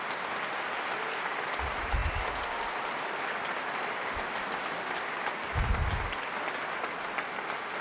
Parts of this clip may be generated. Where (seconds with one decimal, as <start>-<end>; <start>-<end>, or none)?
none